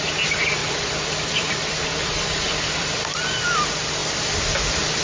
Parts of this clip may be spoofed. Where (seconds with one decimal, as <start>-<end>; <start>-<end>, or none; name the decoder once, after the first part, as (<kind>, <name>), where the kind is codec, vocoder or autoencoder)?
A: 0.6-3.4 (vocoder, BigVGAN v2)